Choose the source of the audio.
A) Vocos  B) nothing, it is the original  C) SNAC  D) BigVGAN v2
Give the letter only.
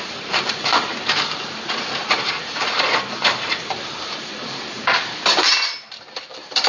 D